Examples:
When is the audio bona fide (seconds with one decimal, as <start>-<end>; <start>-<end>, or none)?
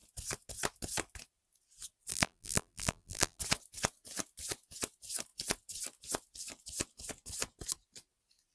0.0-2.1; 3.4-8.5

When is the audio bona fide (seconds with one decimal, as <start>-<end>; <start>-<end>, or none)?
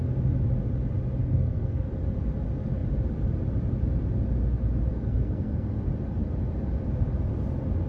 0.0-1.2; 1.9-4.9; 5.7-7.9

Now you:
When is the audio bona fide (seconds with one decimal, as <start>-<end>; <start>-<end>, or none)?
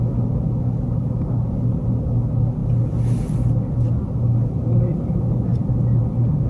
0.0-6.5